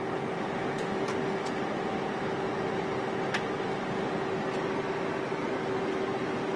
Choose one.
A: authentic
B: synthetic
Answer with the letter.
A